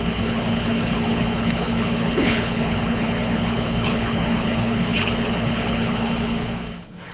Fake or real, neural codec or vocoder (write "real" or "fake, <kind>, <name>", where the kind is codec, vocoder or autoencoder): fake, codec, HILCodec